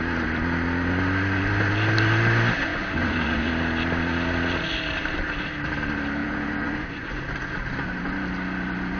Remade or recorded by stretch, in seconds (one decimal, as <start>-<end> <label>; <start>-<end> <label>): 0.0-2.7 recorded; 2.7-3.5 remade; 3.5-6.2 recorded; 6.2-7.2 remade; 7.2-9.0 recorded